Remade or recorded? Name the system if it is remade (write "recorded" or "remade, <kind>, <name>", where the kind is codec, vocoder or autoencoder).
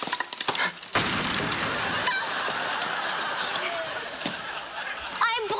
recorded